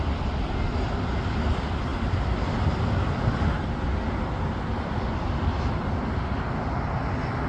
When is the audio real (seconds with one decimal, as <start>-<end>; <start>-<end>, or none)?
0.0-7.5